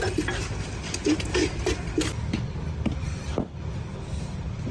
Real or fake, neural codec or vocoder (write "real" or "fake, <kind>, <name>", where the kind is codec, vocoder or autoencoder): real